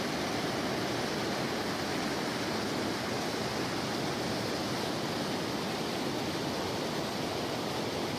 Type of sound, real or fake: real